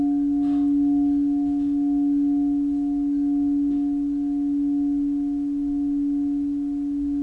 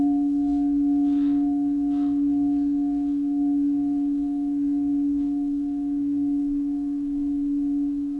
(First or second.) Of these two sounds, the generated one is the second